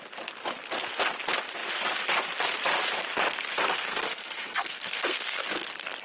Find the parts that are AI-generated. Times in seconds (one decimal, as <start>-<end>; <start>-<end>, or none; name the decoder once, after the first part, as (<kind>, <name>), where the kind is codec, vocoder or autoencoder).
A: 3.9-5.4 (codec, SNAC)